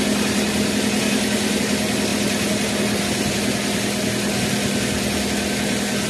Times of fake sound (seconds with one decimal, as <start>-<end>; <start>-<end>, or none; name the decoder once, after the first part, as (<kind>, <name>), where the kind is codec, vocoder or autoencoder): none